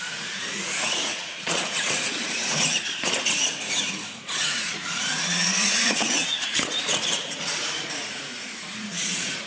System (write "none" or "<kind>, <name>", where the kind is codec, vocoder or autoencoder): vocoder, Vocos